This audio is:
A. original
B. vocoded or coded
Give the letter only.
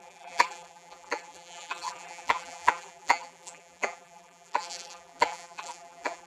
B